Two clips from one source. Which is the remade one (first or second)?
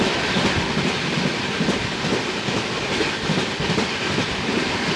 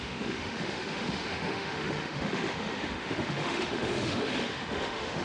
second